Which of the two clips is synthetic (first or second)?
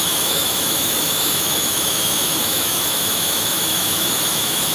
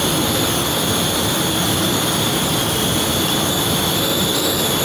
first